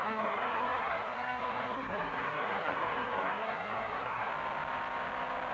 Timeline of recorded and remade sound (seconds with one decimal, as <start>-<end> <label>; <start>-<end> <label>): 0.0-4.3 remade; 4.3-5.5 recorded